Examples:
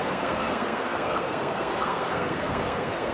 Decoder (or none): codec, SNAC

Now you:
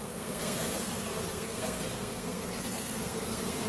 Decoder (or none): codec, SNAC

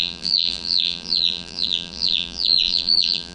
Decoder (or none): vocoder, BigVGAN v2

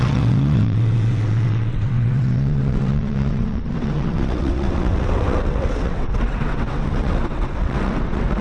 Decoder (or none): vocoder, WaveNeXt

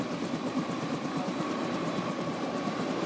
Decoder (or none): vocoder, BigVGAN v2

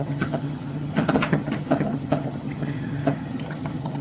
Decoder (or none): vocoder, HiFi-GAN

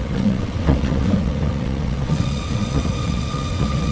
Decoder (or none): vocoder, WaveNeXt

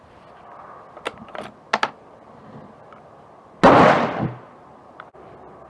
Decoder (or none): none